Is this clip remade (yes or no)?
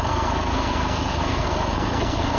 yes